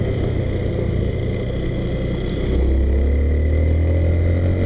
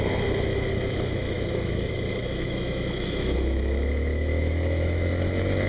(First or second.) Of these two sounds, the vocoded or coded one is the second